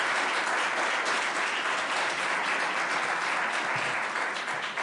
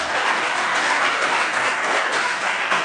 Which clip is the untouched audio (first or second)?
first